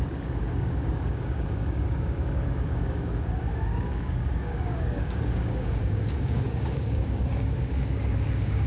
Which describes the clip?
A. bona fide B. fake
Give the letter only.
B